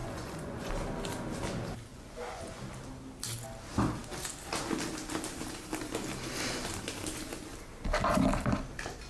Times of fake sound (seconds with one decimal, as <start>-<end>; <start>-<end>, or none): 0.0-0.7; 1.9-2.6